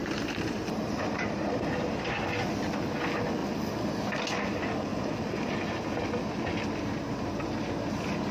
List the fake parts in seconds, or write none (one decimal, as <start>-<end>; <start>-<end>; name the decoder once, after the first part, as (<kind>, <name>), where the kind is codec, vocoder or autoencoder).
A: 0.0-2.2 (vocoder, BigVGAN v2); 4.9-5.5